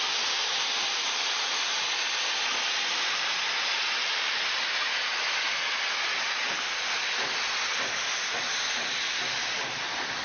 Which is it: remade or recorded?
recorded